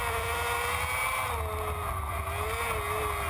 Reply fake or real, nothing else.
real